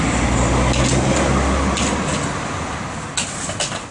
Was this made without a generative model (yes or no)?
yes